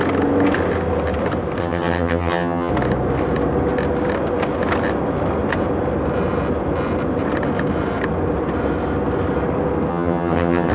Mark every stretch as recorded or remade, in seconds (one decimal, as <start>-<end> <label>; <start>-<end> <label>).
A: 0.0-1.6 recorded; 1.6-2.7 remade; 2.7-9.9 recorded; 9.9-10.7 remade